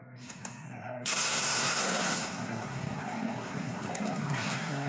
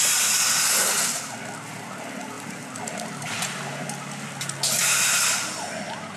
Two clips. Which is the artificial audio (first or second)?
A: first